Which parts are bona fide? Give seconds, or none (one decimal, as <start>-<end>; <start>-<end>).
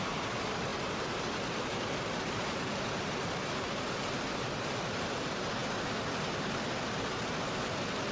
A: 5.6-8.1